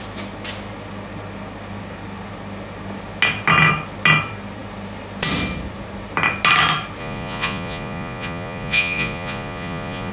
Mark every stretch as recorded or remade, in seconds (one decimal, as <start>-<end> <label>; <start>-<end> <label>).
0.0-7.0 recorded; 7.0-10.1 remade